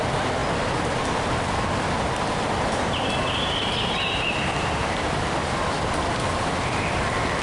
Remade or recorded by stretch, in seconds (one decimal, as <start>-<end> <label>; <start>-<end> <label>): 0.0-7.4 recorded